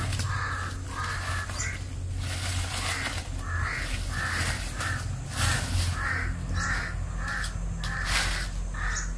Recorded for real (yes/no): yes